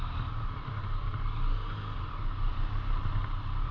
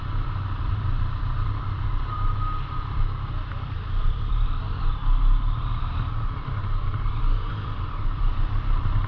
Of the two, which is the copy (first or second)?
second